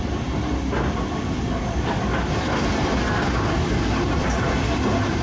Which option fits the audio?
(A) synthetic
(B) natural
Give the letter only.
B